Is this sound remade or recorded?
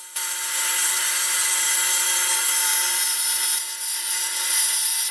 remade